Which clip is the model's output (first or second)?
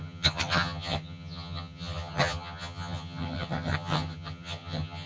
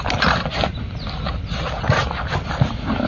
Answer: first